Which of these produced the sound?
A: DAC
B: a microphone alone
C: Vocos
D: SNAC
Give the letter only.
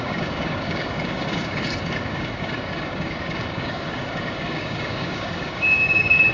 A